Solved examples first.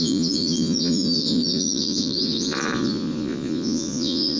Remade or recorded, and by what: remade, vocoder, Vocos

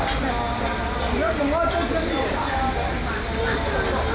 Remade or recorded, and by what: recorded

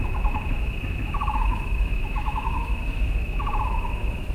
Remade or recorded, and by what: remade, autoencoder, DAC-VAE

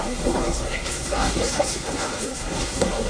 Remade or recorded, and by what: remade, codec, SNAC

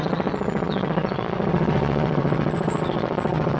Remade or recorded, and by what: remade, vocoder, WaveNeXt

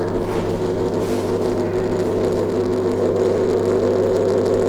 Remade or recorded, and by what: recorded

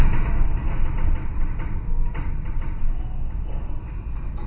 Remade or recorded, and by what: recorded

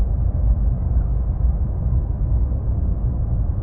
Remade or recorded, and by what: recorded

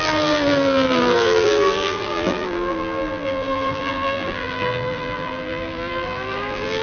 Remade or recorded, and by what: remade, vocoder, BigVGAN v2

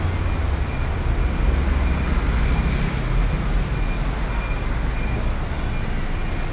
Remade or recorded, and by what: recorded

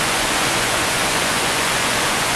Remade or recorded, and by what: remade, vocoder, Vocos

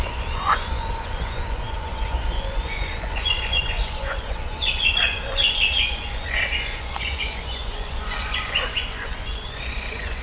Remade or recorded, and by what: remade, vocoder, Vocos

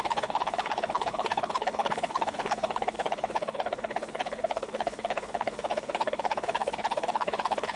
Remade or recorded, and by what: remade, codec, HILCodec